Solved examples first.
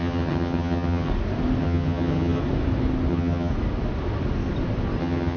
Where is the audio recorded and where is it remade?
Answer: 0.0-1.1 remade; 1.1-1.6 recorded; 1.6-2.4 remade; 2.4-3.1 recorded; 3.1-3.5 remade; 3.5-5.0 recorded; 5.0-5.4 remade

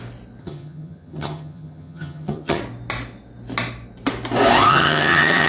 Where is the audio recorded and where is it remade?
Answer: 0.0-0.4 recorded; 0.4-2.6 remade; 2.6-4.7 recorded; 4.7-5.5 remade

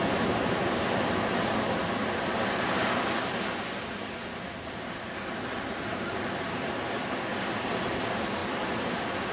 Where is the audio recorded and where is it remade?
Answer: 0.0-9.3 recorded

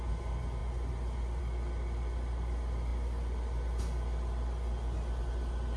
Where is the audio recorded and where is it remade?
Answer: 0.0-5.8 recorded

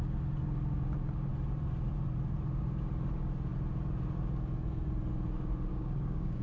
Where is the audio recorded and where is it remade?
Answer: 0.0-5.7 recorded; 5.7-6.4 remade